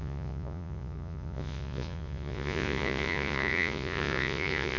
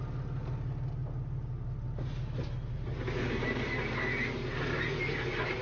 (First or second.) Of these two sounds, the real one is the second